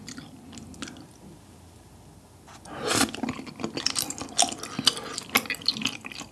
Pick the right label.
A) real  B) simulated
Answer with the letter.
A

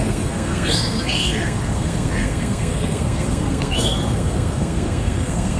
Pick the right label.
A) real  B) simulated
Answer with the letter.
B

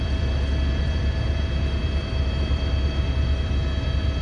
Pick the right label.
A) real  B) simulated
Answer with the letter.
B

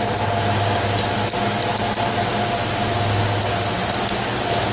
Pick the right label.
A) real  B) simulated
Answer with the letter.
A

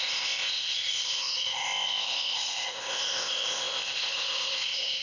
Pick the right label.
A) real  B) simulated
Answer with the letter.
B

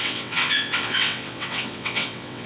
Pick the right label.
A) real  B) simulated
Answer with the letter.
B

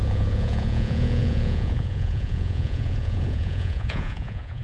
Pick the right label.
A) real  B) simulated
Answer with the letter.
B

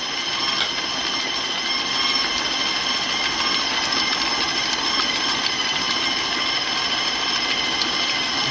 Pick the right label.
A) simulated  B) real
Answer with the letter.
B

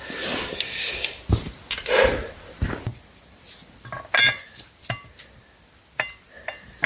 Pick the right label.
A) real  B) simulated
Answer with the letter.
A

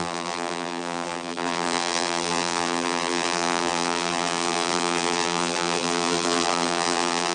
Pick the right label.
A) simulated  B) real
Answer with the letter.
A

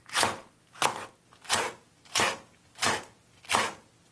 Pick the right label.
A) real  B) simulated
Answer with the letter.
A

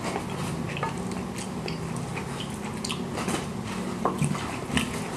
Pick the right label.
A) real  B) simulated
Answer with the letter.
A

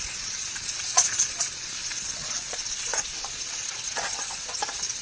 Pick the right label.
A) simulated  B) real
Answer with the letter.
A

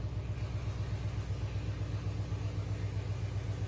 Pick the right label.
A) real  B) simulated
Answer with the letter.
A